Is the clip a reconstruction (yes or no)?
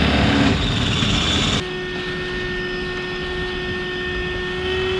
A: no